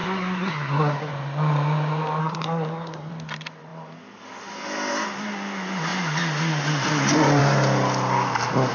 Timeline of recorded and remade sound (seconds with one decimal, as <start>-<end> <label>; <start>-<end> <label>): 0.0-1.1 remade; 1.1-2.2 recorded; 2.2-3.1 remade; 3.1-8.7 recorded